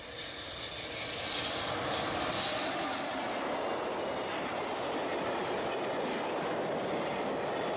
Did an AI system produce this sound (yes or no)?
no